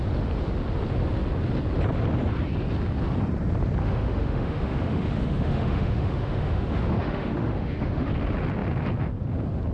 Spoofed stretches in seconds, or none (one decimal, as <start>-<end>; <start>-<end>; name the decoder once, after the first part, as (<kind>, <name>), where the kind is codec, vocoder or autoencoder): 3.8-8.1 (autoencoder, DAC-VAE)